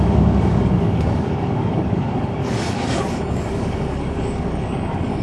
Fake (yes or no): yes